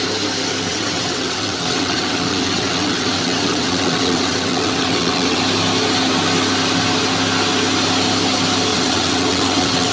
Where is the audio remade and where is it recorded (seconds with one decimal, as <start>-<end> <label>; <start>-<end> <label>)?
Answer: 0.0-0.7 recorded; 0.7-5.4 remade; 5.4-8.7 recorded; 8.7-9.9 remade